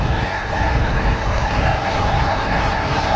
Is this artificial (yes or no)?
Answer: yes